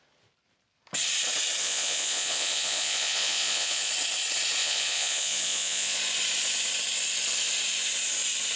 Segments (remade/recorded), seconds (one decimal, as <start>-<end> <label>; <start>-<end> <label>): 0.0-1.6 recorded; 1.6-3.9 remade; 3.9-4.6 recorded; 4.6-6.0 remade; 6.0-8.6 recorded